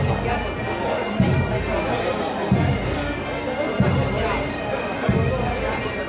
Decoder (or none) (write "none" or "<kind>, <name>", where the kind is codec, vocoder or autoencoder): none